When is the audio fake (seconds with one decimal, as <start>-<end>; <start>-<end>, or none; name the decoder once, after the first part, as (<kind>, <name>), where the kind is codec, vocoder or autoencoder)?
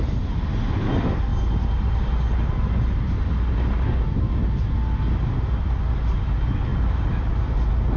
6.7-7.3 (vocoder, BigVGAN v2)